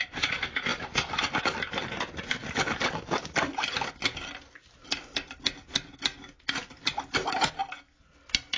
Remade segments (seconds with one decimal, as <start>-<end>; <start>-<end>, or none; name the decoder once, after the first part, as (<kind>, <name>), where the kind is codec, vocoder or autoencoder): none